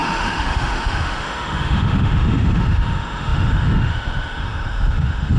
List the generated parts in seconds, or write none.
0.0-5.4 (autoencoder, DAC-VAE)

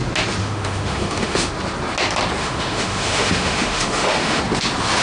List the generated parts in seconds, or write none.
0.4-1.5 (autoencoder, DAC-VAE); 2.4-4.4

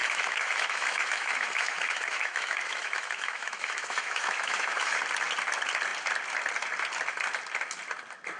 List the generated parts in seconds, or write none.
0.0-5.0 (autoencoder, DAC-VAE)

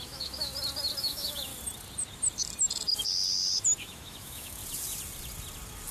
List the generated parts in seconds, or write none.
0.0-0.5 (autoencoder, DAC-VAE); 1.0-1.5; 3.8-4.6

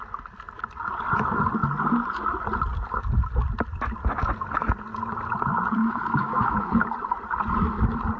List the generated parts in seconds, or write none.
5.8-6.7 (autoencoder, DAC-VAE)

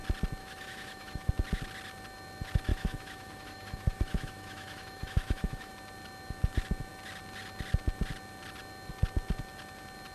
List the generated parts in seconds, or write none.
0.4-1.3 (autoencoder, DAC-VAE); 2.7-5.7

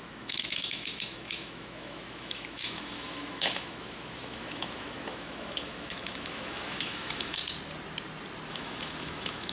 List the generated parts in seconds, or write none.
0.0-7.4 (autoencoder, DAC-VAE); 8.5-9.5

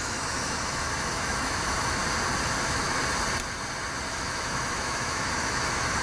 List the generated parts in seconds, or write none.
0.0-2.0 (autoencoder, DAC-VAE); 2.6-3.0; 4.1-6.0